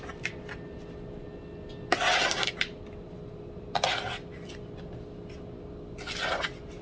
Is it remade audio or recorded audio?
recorded